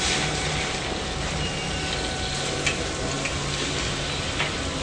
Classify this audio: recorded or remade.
recorded